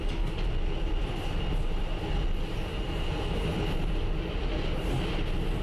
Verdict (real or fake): real